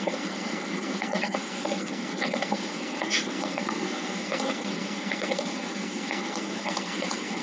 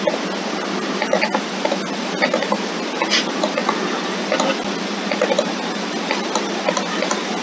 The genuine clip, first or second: second